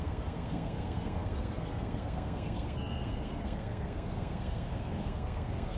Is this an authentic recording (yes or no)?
no